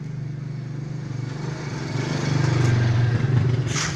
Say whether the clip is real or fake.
real